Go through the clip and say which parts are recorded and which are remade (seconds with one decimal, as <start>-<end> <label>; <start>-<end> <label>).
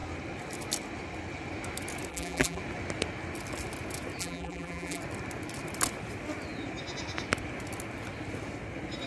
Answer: 0.0-2.1 recorded; 2.1-2.6 remade; 2.6-4.2 recorded; 4.2-5.0 remade; 5.0-9.1 recorded